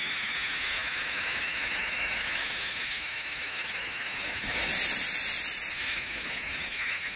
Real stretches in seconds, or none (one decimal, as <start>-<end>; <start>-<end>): 4.7-5.7